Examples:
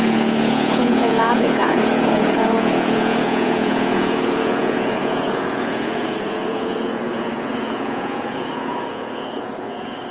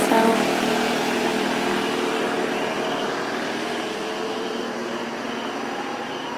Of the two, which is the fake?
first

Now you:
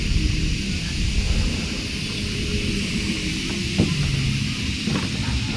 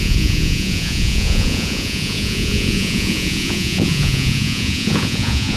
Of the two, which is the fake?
second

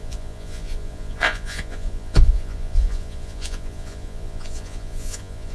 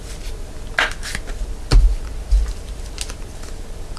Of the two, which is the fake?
first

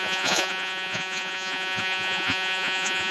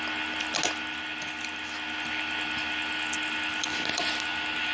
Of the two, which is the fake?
first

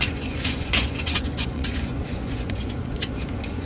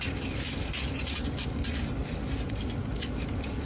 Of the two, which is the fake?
first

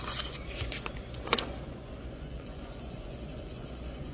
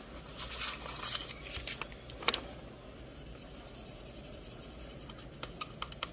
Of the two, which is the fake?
first